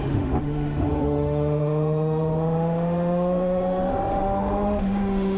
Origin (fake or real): fake